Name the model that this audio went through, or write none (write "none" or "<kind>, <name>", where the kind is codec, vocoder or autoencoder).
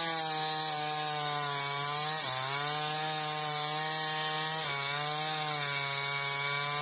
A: none